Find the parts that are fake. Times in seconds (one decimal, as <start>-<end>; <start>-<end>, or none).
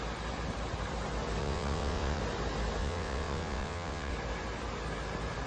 1.4-2.2; 2.8-4.1